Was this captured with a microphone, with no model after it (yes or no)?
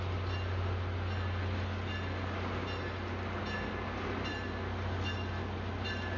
yes